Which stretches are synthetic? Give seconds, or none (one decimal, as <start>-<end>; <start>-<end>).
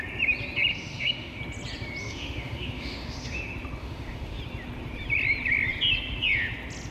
0.7-1.4; 2.0-3.4; 3.8-4.4